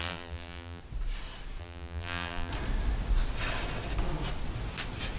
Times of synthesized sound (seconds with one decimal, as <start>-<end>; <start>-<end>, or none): 0.0-0.8; 1.6-2.5